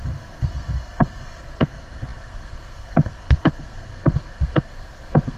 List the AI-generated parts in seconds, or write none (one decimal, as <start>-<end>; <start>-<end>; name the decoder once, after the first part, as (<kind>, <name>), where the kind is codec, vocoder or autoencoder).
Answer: 0.0-5.4 (codec, SNAC)